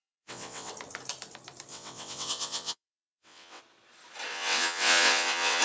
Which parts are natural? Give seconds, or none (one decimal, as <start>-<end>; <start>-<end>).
0.7-1.7; 3.6-4.3